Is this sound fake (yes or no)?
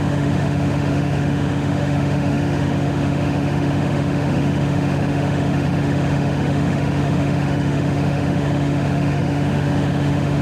yes